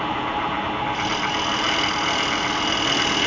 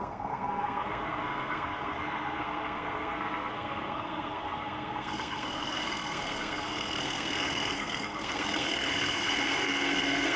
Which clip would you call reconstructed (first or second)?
second